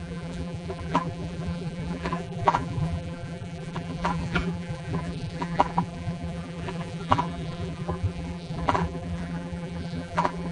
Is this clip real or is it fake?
fake